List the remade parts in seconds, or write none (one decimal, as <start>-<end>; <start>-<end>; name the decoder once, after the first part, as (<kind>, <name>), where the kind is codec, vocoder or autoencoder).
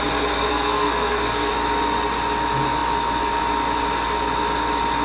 0.5-1.5 (codec, SNAC)